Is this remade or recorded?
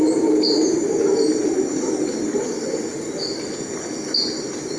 recorded